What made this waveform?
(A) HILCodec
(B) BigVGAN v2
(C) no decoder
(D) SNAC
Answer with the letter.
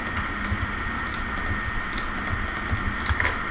B